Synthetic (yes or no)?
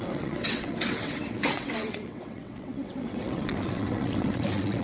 yes